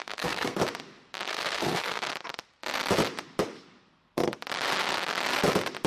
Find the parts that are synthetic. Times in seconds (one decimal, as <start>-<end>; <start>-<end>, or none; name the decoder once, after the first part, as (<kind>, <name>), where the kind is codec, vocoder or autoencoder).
0.0-0.6 (codec, SNAC); 1.3-2.1